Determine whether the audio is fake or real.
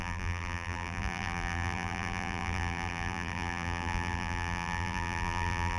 fake